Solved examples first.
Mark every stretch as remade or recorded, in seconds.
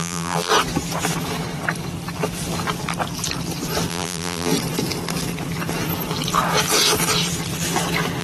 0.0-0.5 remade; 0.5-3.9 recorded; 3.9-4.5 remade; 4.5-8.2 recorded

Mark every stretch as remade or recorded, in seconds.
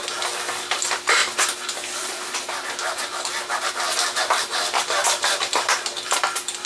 0.0-1.2 remade; 1.2-3.7 recorded; 3.7-6.7 remade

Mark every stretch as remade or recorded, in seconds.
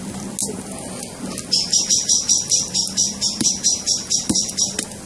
0.0-5.1 recorded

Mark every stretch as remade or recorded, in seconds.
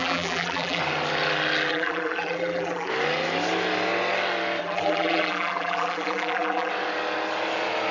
0.0-0.8 remade; 0.8-1.7 recorded; 1.7-2.9 remade; 2.9-4.6 recorded; 4.6-6.7 remade; 6.7-7.9 recorded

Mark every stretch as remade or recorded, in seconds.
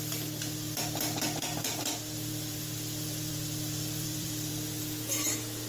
0.0-1.7 recorded; 1.7-4.5 remade; 4.5-5.7 recorded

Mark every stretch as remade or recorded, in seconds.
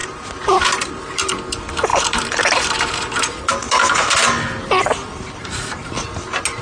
0.0-1.3 remade; 1.3-1.9 recorded; 1.9-3.5 remade; 3.5-4.8 recorded; 4.8-5.9 remade; 5.9-6.6 recorded